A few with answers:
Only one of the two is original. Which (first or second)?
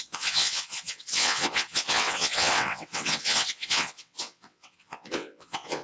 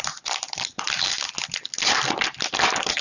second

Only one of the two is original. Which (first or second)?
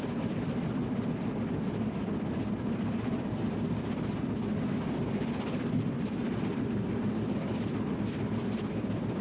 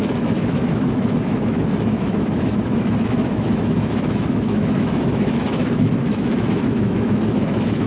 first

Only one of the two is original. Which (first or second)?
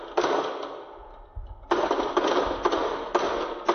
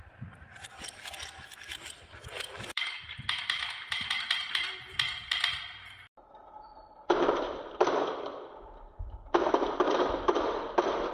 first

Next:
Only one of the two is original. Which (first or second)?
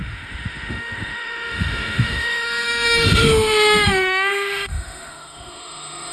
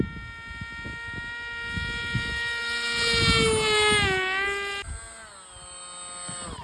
second